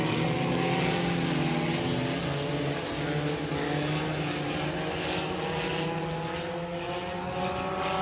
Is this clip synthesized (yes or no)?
no